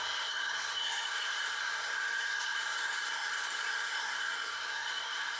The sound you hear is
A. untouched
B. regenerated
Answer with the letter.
B